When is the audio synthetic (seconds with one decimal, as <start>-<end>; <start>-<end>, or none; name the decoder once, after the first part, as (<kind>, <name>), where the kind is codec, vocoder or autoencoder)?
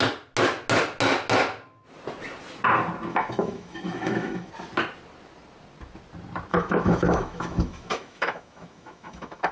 3.1-4.5 (autoencoder, DAC-VAE); 6.5-9.5